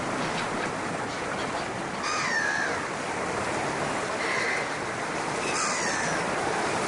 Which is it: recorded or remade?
recorded